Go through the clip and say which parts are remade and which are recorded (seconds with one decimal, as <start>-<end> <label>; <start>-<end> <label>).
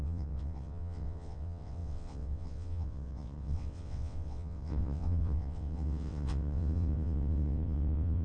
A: 0.0-8.2 remade